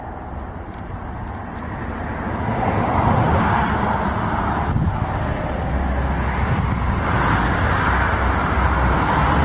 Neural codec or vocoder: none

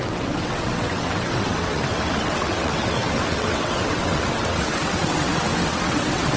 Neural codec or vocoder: vocoder, WaveNeXt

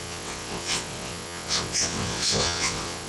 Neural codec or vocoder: vocoder, WaveNeXt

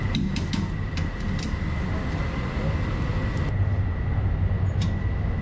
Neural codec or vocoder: none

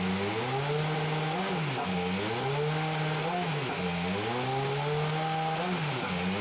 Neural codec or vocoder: none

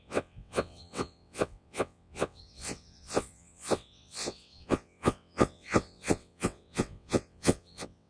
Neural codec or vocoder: vocoder, WaveNeXt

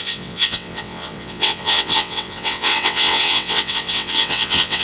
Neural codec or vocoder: vocoder, WaveNeXt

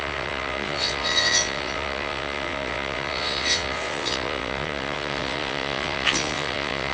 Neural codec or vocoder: vocoder, WaveNeXt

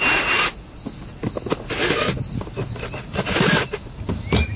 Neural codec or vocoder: none